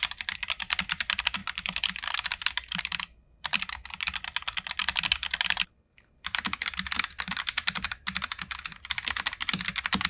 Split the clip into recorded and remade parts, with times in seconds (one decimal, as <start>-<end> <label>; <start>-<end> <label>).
0.0-1.4 remade; 1.4-3.2 recorded; 3.2-4.8 remade; 4.8-10.1 recorded